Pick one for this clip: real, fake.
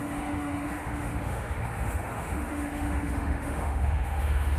fake